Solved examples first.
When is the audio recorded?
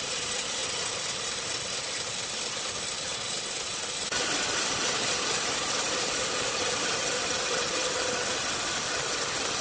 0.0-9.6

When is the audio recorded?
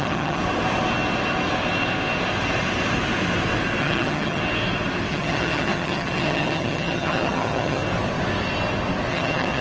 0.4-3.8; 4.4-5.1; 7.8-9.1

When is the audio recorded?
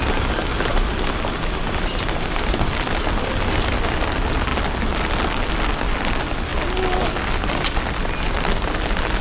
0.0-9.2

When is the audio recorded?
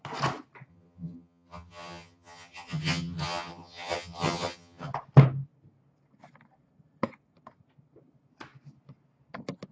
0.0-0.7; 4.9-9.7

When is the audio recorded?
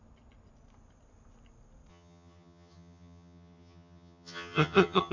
0.0-1.9